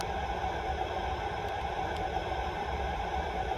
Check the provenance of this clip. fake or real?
fake